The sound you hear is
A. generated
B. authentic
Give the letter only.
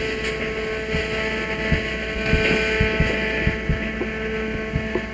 B